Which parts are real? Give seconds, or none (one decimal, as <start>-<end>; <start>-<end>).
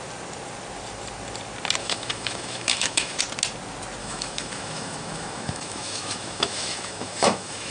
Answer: 0.0-1.8; 3.2-4.0